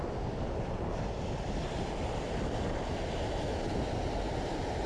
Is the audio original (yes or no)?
yes